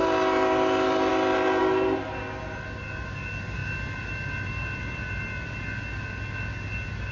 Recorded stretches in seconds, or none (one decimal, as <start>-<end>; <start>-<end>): 0.0-7.1